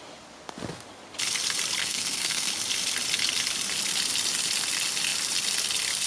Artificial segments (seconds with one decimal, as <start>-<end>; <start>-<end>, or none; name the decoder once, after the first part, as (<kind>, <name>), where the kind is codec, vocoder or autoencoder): 1.8-2.5 (codec, SNAC)